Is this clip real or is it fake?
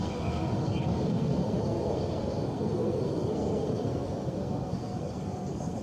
fake